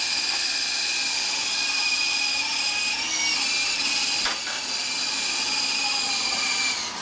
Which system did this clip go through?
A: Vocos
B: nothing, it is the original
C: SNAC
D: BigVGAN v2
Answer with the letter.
B